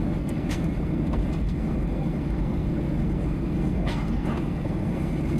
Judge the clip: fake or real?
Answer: fake